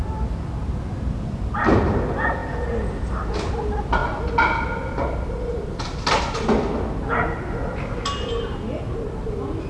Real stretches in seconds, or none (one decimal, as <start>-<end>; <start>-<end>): 0.0-9.7